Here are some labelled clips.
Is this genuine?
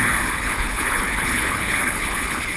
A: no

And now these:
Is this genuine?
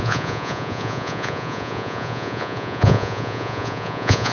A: no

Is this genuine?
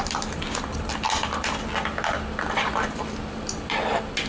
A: yes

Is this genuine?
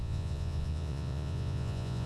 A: no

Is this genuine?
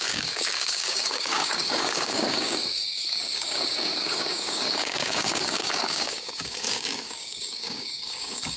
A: no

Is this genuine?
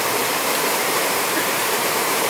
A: no